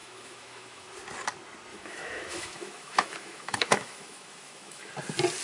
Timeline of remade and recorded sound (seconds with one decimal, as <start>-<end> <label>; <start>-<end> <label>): 0.0-0.9 remade; 0.9-1.7 recorded; 1.7-4.9 remade; 4.9-5.4 recorded